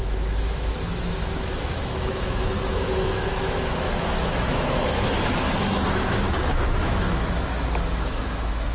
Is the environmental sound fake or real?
fake